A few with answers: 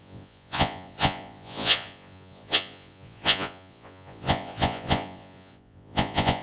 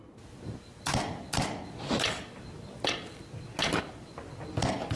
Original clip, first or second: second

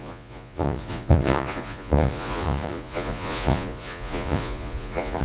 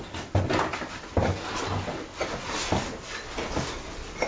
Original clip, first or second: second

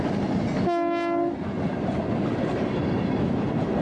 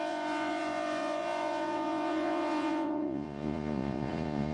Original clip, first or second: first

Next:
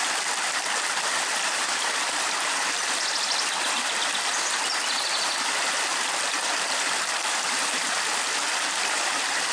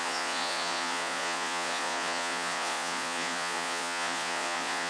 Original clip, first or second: first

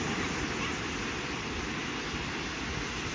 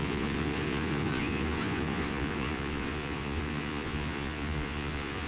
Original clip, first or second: first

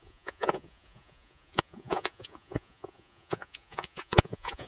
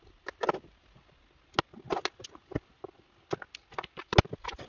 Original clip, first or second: second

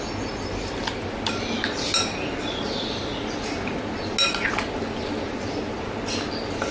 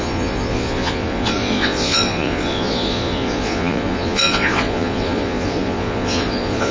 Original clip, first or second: first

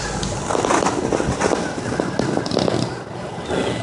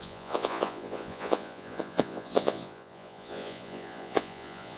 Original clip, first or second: first